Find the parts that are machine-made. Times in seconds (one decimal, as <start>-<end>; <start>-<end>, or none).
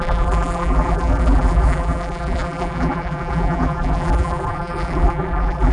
0.0-5.7